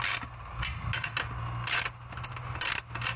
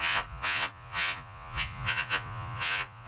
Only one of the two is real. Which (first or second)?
first